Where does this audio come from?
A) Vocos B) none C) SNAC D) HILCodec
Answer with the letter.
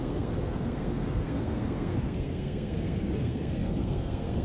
C